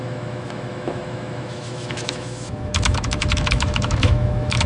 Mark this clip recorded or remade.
remade